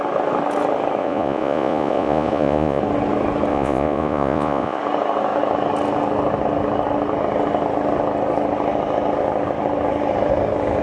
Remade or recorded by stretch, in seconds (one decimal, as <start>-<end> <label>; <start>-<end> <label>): 0.0-1.0 recorded; 1.0-2.8 remade; 2.8-3.5 recorded; 3.5-4.8 remade; 4.8-10.8 recorded